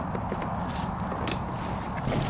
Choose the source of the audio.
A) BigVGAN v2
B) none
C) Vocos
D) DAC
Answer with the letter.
B